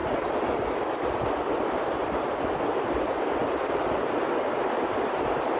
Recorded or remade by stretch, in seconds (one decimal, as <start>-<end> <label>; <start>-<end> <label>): 0.0-5.6 recorded